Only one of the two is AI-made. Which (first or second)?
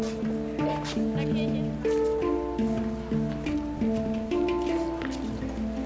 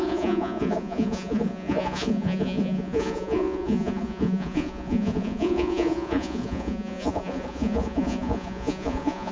second